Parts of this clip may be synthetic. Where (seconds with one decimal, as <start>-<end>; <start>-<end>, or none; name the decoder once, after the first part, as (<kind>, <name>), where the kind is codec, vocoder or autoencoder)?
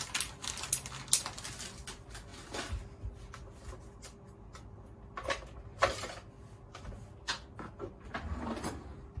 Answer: none